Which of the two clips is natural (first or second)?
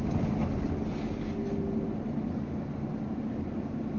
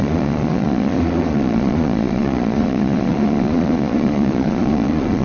first